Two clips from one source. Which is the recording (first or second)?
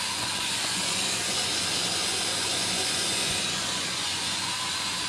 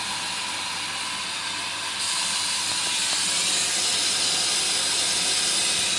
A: second